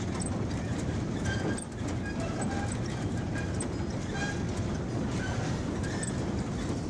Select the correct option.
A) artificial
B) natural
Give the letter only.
B